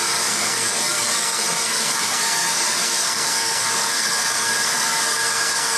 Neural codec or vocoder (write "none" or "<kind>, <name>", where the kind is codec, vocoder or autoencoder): codec, SNAC